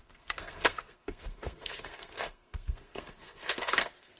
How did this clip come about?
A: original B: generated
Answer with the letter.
B